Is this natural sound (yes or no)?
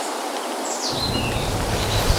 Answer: yes